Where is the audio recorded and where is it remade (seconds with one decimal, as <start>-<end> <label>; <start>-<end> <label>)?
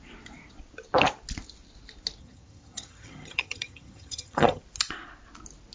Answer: 0.0-2.2 recorded; 2.2-4.6 remade; 4.6-5.7 recorded